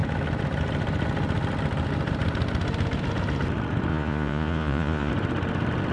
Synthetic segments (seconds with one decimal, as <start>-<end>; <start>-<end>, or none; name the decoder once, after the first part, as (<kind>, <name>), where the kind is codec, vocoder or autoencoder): 3.9-5.1 (vocoder, Vocos)

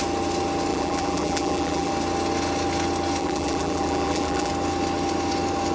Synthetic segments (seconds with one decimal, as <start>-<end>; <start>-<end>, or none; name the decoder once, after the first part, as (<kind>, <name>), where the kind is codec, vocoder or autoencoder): 0.7-1.9 (vocoder, BigVGAN v2); 3.2-4.5

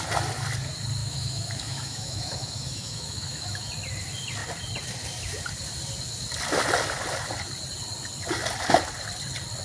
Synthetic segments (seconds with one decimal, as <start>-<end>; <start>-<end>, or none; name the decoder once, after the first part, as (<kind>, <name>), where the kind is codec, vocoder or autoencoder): 1.0-3.7 (autoencoder, DAC-VAE)

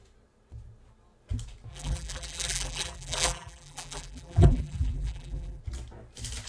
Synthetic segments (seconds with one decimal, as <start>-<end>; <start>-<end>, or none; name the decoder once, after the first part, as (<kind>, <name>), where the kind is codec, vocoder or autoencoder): 1.7-5.6 (vocoder, BigVGAN v2)

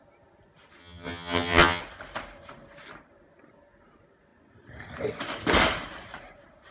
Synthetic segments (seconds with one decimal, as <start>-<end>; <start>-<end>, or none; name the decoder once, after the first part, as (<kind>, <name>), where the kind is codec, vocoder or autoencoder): 0.8-1.8 (vocoder, HiFi-GAN)

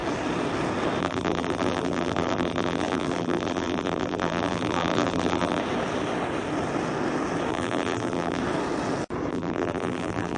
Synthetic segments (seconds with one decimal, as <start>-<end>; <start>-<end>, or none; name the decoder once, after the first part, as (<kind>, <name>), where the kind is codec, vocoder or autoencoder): 1.0-5.6 (vocoder, BigVGAN v2); 7.5-8.4; 9.3-10.4

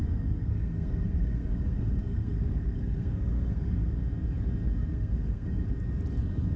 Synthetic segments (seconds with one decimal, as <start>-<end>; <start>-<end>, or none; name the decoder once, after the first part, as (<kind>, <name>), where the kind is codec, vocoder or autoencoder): 0.0-4.0 (codec, SNAC); 4.9-5.6